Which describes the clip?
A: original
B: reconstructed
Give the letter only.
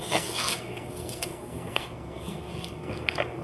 B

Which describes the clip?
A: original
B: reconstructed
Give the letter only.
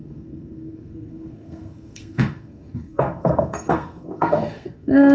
B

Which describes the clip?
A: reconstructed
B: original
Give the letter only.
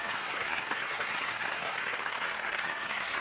A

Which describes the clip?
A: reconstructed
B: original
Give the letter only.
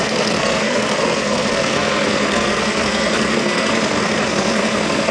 A